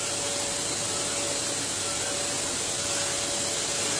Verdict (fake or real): real